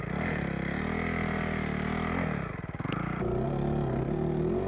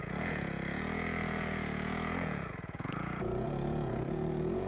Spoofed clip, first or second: second